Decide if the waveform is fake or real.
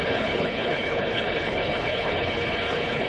fake